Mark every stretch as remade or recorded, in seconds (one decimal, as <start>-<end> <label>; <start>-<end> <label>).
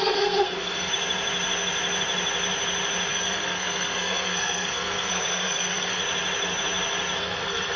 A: 0.0-0.9 remade; 0.9-3.1 recorded; 3.1-6.0 remade; 6.0-7.2 recorded; 7.2-7.8 remade